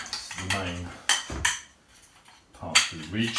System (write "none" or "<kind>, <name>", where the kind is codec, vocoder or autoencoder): none